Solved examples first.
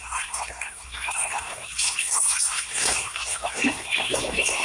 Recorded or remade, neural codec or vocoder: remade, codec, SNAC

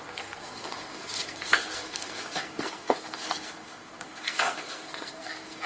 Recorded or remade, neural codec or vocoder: remade, codec, SNAC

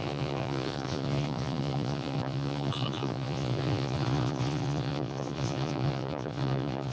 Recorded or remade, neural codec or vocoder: remade, vocoder, Vocos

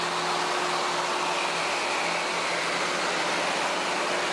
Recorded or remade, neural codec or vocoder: recorded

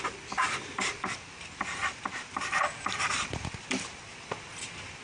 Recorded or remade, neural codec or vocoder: recorded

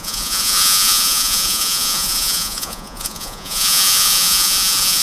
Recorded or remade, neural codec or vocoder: remade, vocoder, Vocos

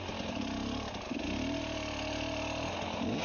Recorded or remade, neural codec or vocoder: recorded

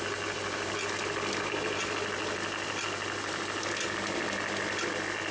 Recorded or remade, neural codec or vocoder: recorded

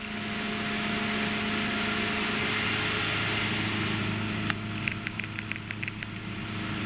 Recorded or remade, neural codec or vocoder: recorded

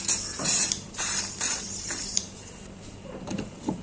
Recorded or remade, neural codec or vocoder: remade, vocoder, BigVGAN v2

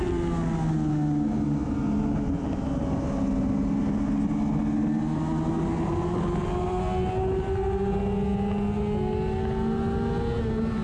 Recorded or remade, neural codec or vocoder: recorded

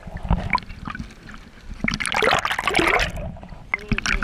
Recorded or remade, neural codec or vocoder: recorded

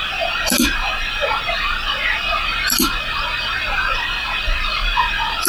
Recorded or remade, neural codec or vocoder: recorded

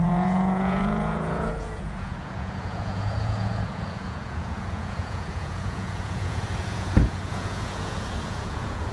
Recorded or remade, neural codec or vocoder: remade, vocoder, Vocos